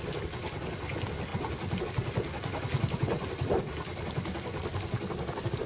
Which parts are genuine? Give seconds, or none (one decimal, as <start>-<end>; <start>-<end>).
0.0-5.7